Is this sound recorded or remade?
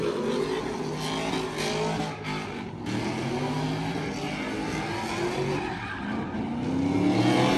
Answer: recorded